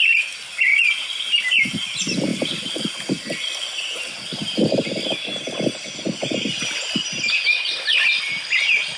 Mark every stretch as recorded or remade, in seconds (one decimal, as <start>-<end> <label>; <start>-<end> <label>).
0.0-9.0 recorded